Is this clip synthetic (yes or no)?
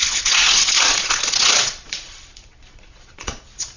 yes